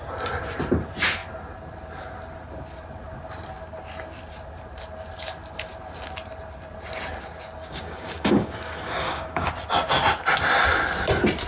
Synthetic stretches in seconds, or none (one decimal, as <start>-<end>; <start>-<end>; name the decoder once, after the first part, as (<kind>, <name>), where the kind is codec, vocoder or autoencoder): 7.6-9.5 (codec, DAC)